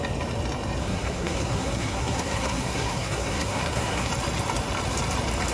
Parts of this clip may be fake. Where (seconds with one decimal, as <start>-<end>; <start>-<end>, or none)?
0.8-4.1